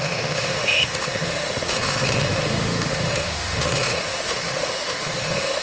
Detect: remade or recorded remade